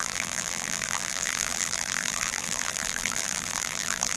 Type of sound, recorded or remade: remade